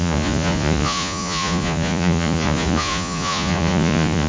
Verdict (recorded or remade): remade